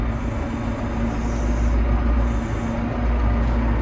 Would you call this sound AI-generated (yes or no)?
no